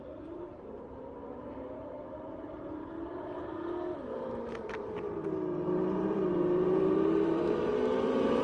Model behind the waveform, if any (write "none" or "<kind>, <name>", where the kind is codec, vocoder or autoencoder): vocoder, BigVGAN v2